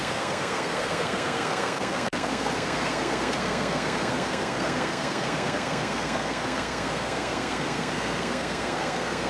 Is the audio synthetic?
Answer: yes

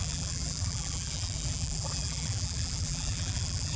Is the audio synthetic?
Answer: yes